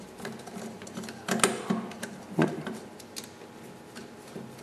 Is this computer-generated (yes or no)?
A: no